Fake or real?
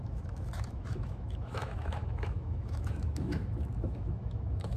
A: fake